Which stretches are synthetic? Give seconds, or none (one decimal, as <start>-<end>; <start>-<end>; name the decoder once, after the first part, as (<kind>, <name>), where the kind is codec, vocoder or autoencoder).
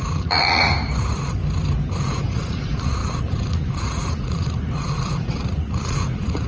0.0-1.4 (vocoder, Vocos); 2.0-6.5